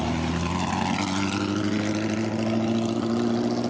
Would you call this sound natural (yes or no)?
yes